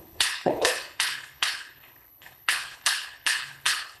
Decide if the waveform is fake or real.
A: fake